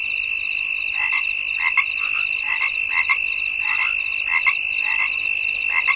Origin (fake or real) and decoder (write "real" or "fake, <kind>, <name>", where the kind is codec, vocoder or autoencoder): real